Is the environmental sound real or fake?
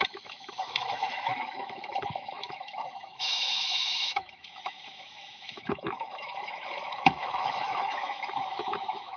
fake